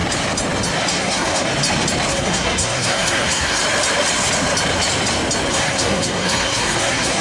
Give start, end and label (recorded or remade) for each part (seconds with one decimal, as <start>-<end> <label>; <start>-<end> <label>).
0.0-0.9 recorded; 0.9-1.5 remade; 1.5-2.1 recorded; 2.1-3.6 remade; 3.6-5.5 recorded; 5.5-7.2 remade